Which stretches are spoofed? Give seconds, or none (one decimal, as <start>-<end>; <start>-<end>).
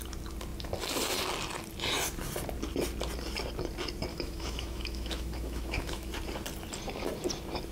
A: 4.1-6.1